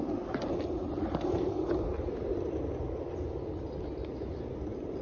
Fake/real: real